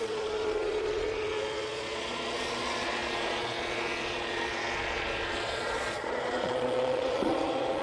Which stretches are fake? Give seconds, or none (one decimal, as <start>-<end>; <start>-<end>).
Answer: 0.0-7.8